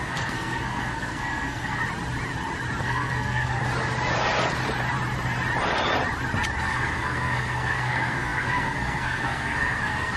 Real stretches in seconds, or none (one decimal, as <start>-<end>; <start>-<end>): 1.8-2.8; 3.6-6.6